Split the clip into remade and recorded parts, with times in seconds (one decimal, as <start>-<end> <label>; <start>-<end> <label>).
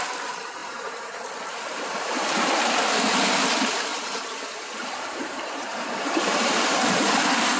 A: 0.0-0.6 recorded; 0.6-2.8 remade; 2.8-3.9 recorded; 3.9-7.0 remade; 7.0-7.6 recorded